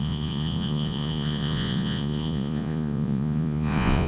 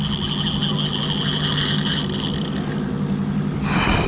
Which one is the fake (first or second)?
first